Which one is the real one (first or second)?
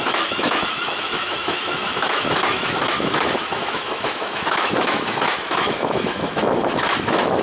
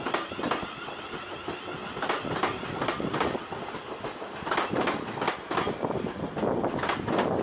second